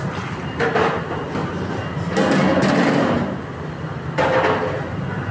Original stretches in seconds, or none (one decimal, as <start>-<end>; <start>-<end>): 0.0-5.3